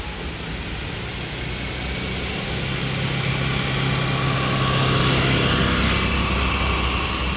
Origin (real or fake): real